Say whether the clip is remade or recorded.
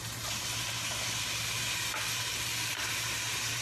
recorded